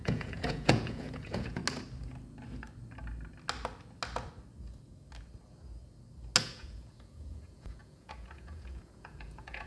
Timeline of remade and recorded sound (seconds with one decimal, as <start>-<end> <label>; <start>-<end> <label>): 0.0-1.6 remade; 1.6-6.4 recorded; 6.4-9.7 remade